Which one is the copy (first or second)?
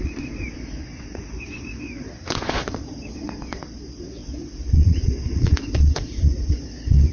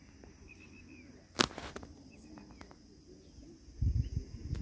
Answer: first